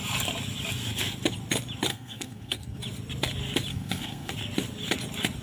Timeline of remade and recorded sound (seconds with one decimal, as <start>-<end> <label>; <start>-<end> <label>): 0.0-1.9 recorded; 1.9-2.8 remade; 2.8-3.7 recorded; 3.7-4.3 remade; 4.3-5.4 recorded